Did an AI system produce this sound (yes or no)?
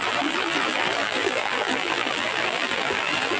yes